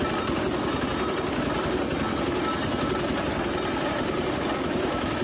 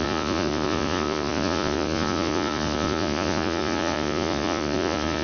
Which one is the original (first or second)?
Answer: first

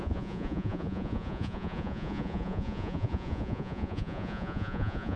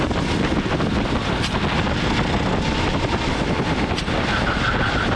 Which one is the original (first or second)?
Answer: second